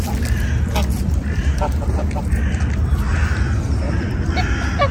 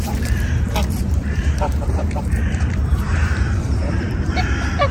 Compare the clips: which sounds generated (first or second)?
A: second